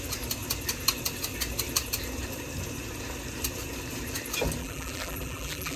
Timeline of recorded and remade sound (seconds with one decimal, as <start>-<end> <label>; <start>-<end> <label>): 0.0-4.6 recorded; 4.6-5.8 remade

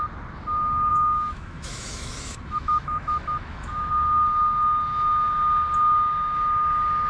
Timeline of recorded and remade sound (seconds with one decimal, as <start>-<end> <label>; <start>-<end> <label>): 0.0-0.9 recorded; 0.9-3.9 remade; 3.9-7.1 recorded

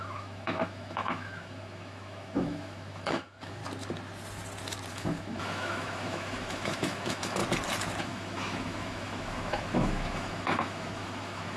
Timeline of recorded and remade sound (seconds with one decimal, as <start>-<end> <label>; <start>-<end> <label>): 0.0-3.6 remade; 3.6-4.9 recorded; 4.9-7.4 remade; 7.4-8.0 recorded; 8.0-11.6 remade

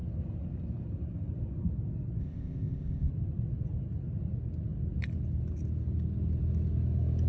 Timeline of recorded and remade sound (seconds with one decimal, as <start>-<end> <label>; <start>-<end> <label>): 0.0-2.2 recorded; 2.2-3.1 remade; 3.1-7.3 recorded